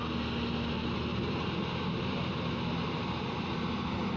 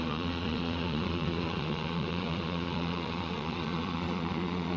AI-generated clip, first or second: second